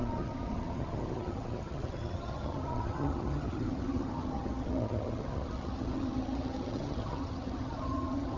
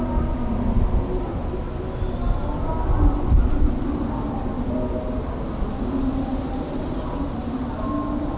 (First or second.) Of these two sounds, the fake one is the first